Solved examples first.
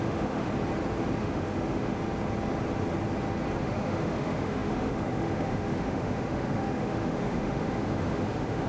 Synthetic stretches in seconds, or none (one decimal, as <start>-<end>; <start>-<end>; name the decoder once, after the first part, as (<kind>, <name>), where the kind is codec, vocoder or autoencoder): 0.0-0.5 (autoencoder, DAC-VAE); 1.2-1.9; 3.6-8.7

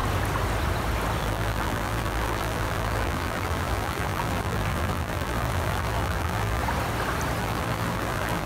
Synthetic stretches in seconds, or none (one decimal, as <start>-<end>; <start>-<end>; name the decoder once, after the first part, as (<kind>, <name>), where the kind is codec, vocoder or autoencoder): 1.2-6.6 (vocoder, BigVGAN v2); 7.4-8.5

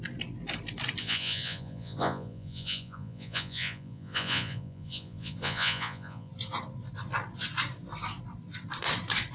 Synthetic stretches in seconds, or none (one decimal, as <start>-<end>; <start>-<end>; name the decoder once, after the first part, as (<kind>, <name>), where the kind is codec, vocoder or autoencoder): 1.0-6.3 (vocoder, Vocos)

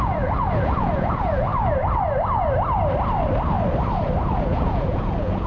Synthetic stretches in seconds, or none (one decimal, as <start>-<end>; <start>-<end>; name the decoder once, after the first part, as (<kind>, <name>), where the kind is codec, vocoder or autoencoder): 0.0-1.5 (vocoder, Vocos); 4.4-5.5

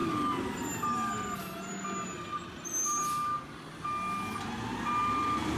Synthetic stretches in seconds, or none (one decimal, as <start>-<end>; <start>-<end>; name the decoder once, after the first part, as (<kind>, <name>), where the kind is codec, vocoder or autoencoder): none

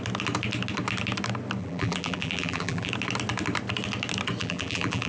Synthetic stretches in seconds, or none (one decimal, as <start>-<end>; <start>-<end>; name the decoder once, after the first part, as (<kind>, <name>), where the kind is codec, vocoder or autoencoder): 1.6-2.9 (vocoder, BigVGAN v2); 4.4-5.1